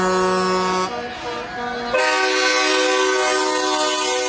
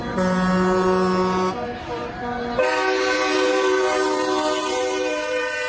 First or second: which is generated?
second